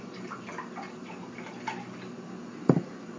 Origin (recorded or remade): recorded